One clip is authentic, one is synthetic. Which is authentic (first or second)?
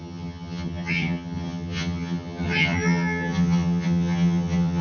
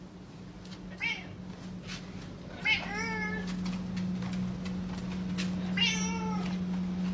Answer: second